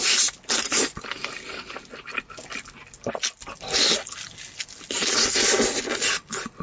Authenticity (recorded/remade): recorded